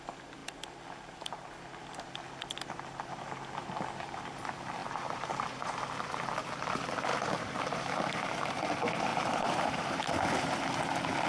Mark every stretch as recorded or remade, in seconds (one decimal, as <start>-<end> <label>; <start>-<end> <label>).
0.0-4.8 recorded; 4.8-5.8 remade; 5.8-7.1 recorded; 7.1-8.6 remade; 8.6-9.1 recorded; 9.1-10.0 remade; 10.0-11.3 recorded